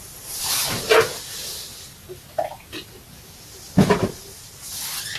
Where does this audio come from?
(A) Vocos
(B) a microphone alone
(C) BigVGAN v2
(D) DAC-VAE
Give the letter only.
B